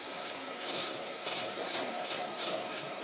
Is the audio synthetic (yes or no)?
yes